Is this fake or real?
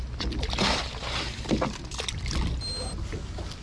real